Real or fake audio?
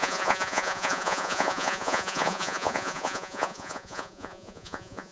fake